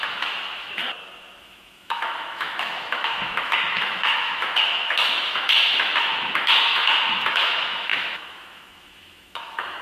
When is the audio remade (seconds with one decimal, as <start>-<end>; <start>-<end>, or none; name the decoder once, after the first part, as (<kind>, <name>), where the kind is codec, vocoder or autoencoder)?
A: 0.0-0.8 (autoencoder, DAC-VAE); 1.4-9.8